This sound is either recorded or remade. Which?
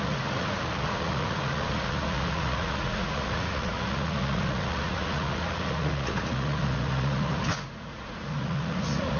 remade